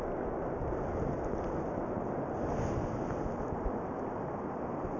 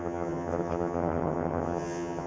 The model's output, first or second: second